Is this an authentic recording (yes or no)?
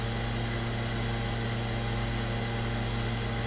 yes